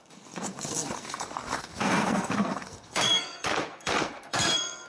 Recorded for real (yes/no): no